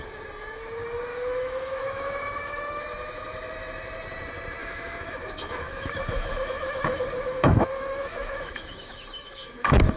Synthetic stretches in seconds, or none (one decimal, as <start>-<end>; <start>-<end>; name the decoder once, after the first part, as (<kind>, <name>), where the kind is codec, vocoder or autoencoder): 1.1-2.8 (autoencoder, DAC-VAE); 4.6-10.0